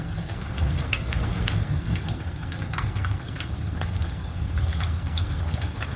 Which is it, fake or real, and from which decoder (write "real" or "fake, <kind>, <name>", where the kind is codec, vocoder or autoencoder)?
fake, codec, SNAC